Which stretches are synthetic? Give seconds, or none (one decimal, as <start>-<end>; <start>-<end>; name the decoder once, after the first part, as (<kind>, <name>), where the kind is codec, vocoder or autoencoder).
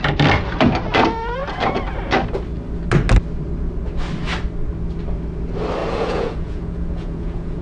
5.8-7.6 (vocoder, Vocos)